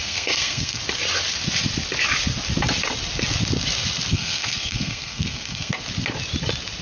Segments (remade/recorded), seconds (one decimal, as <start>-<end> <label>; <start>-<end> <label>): 0.0-0.8 remade; 0.8-4.1 recorded; 4.1-5.8 remade; 5.8-6.8 recorded